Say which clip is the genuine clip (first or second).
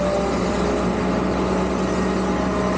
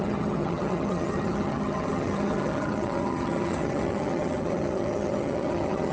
first